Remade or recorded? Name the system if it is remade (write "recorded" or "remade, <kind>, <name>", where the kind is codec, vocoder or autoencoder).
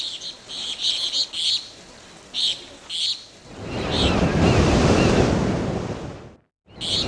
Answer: recorded